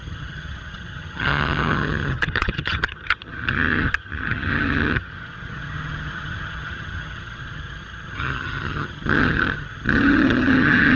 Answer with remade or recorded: remade